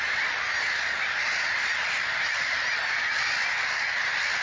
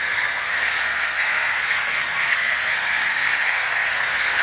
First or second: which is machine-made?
second